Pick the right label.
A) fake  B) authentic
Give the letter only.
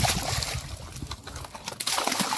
B